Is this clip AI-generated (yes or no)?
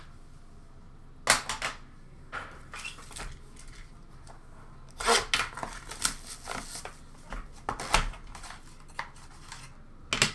no